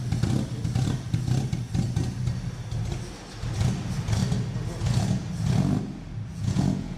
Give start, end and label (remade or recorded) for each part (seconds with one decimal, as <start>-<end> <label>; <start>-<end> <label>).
0.0-6.3 recorded; 6.3-7.0 remade